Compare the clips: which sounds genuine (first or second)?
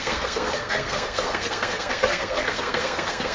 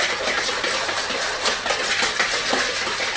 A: second